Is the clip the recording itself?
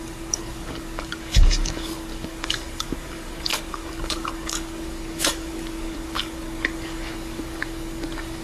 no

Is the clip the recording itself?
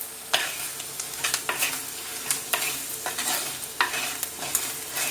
yes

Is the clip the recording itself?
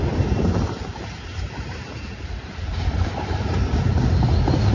no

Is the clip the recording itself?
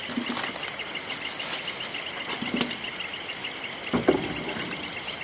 yes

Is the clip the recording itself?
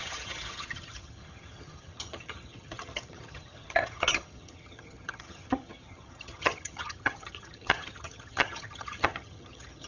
no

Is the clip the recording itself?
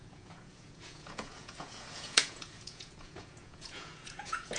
no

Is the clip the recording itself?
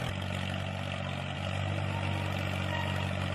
yes